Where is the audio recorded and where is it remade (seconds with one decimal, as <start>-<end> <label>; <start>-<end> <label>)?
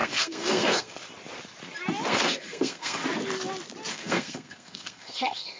0.0-1.0 remade; 1.0-2.1 recorded; 2.1-3.0 remade; 3.0-3.9 recorded; 3.9-5.6 remade